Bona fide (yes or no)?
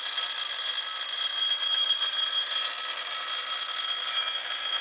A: yes